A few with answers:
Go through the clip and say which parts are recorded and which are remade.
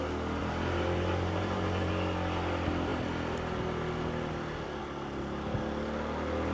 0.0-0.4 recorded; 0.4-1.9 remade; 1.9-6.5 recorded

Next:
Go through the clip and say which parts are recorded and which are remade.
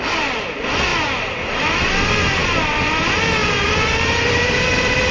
0.0-0.9 recorded; 0.9-1.6 remade; 1.6-3.4 recorded; 3.4-5.1 remade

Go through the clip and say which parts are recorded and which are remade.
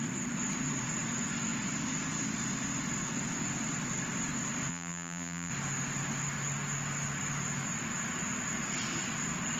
0.0-4.7 recorded; 4.7-5.5 remade; 5.5-9.6 recorded